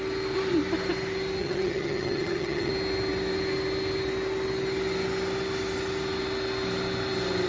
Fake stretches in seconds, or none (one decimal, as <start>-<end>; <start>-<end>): 1.4-2.7